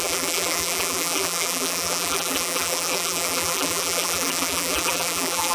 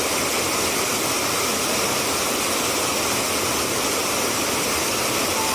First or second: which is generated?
first